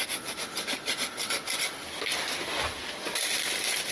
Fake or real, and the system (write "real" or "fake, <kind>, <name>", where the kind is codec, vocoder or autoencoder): real